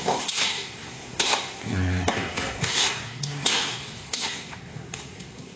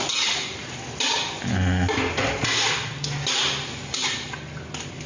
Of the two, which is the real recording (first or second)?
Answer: second